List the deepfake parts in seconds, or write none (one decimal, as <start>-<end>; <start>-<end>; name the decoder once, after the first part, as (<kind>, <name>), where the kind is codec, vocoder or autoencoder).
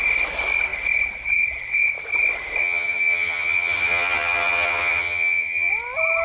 2.6-5.7 (vocoder, HiFi-GAN)